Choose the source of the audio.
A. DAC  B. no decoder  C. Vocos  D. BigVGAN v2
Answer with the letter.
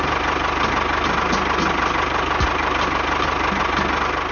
B